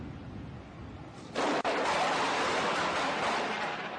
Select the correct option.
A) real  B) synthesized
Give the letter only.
A